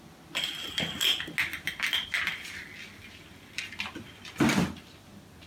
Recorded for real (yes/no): yes